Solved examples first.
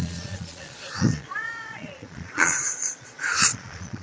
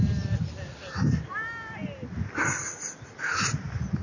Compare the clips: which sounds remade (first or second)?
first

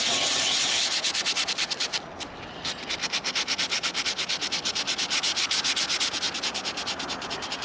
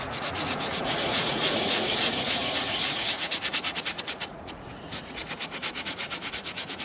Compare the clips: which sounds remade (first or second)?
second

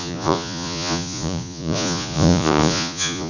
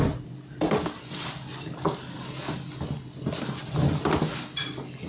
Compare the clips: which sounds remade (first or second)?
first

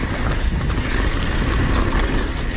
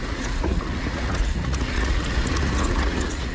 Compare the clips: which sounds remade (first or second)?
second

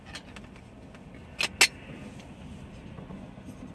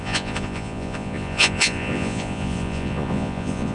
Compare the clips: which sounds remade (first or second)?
second